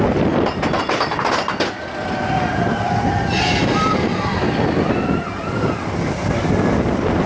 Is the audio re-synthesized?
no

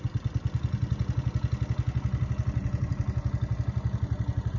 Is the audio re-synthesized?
no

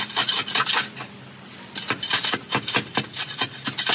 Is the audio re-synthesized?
no